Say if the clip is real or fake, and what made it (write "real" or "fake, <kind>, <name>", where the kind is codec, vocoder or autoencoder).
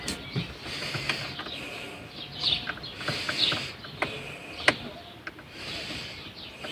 real